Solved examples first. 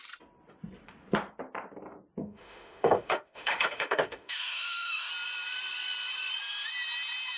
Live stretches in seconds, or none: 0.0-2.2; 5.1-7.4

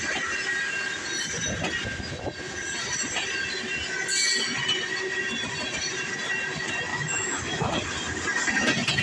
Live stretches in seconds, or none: 0.0-6.9; 7.7-9.0

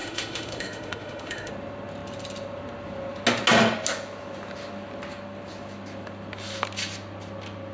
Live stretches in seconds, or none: 1.5-7.7

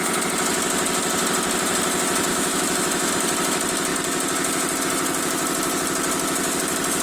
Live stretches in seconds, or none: 0.0-2.3; 3.1-7.0

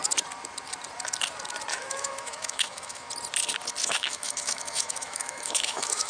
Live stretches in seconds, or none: 0.0-1.7; 3.1-3.8

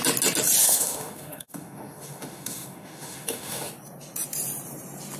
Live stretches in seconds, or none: 0.0-0.6; 3.7-5.2

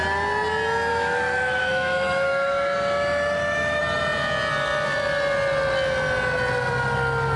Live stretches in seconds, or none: 0.0-0.9; 3.8-7.4

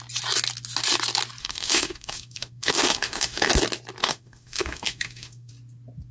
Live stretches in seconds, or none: 0.0-1.4; 3.5-4.0; 5.5-6.1